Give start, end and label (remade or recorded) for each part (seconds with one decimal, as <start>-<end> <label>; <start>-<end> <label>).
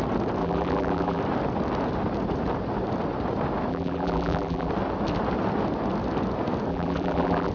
0.0-0.4 recorded; 0.4-1.2 remade; 1.2-3.7 recorded; 3.7-4.7 remade; 4.7-6.7 recorded; 6.7-7.5 remade